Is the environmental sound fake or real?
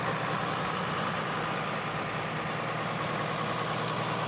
real